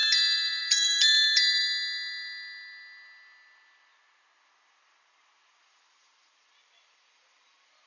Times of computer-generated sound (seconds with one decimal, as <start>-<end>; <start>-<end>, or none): 0.0-1.6; 4.4-7.9